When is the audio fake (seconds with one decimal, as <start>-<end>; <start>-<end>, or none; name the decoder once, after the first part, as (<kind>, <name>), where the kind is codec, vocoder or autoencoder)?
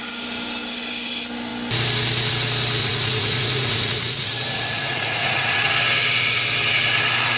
2.8-5.7 (vocoder, Vocos)